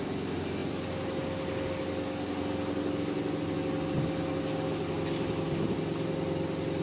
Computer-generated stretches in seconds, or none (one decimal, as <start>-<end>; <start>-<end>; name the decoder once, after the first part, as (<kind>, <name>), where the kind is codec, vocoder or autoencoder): none